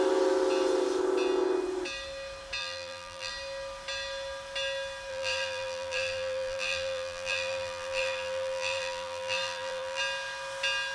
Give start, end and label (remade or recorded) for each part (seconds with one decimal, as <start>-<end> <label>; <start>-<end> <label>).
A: 0.0-2.6 recorded; 2.6-3.3 remade; 3.3-5.1 recorded; 5.1-10.0 remade; 10.0-10.9 recorded